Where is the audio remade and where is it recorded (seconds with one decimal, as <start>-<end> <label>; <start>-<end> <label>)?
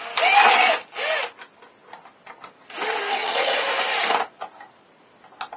0.0-3.1 recorded; 3.1-3.6 remade; 3.6-5.6 recorded